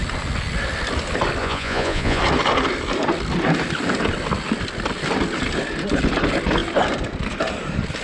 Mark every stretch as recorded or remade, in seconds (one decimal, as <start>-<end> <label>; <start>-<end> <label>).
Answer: 0.0-1.4 recorded; 1.4-2.2 remade; 2.2-8.0 recorded